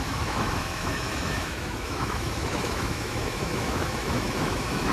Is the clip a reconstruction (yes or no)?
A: yes